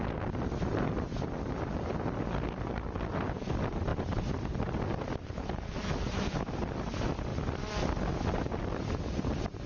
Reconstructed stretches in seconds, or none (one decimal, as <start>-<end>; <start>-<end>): none